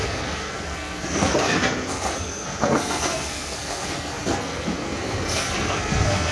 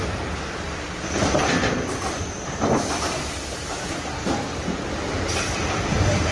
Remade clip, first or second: first